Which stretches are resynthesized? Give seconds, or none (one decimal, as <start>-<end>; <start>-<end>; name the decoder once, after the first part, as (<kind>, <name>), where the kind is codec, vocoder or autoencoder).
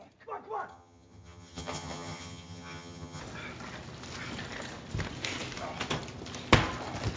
0.7-3.2 (vocoder, HiFi-GAN)